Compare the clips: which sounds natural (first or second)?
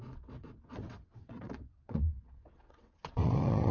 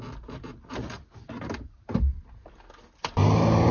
second